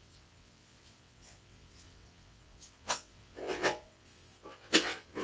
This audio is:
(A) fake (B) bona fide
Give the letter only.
A